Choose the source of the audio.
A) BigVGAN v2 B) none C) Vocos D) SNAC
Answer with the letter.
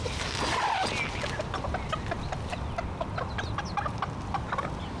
B